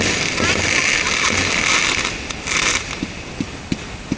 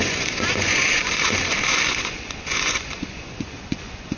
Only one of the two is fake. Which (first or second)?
second